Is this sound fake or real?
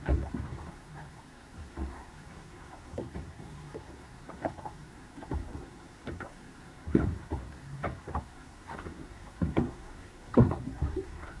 fake